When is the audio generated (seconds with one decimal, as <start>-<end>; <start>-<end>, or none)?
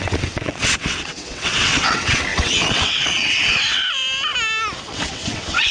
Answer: 0.0-3.8; 4.9-5.7